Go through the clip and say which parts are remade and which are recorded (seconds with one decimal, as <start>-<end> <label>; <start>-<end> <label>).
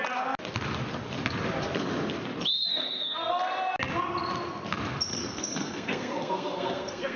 0.0-2.7 recorded; 2.7-3.3 remade; 3.3-5.1 recorded; 5.1-7.2 remade